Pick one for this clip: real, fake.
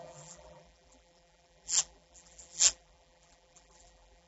fake